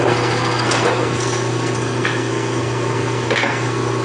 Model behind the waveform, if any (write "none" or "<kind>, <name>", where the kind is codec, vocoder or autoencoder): codec, SNAC